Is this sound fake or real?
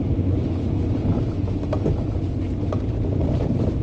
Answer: real